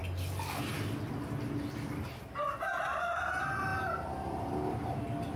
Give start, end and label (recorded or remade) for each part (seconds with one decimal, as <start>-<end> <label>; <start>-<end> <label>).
0.0-5.4 recorded